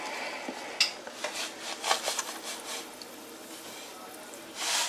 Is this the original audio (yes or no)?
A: yes